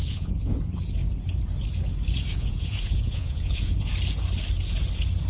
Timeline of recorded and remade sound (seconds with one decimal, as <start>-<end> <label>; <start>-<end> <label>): 0.0-0.6 remade; 0.6-2.3 recorded; 2.3-3.9 remade; 3.9-5.3 recorded